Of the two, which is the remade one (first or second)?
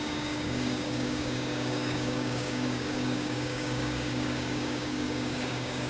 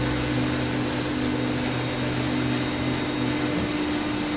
first